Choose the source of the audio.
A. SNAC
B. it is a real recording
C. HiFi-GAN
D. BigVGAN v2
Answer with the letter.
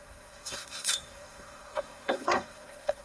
A